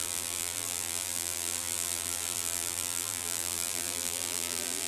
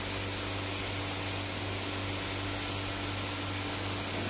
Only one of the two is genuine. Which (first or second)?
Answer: second